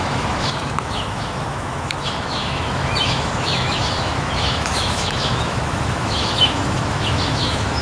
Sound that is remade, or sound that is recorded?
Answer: remade